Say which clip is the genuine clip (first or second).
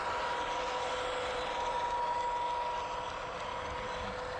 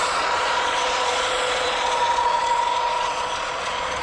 first